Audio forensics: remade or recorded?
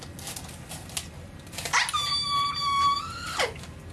recorded